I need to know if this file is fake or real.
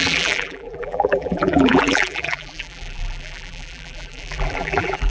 fake